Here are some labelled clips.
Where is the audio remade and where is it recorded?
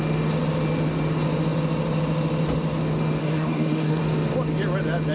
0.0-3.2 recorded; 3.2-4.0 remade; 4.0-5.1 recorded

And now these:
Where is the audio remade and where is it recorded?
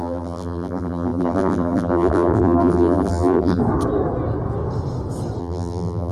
0.0-3.6 remade; 3.6-5.4 recorded; 5.4-6.1 remade